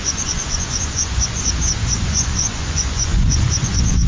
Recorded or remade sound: remade